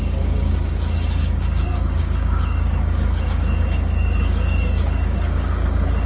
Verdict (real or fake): fake